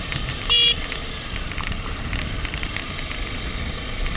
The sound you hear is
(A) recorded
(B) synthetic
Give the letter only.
A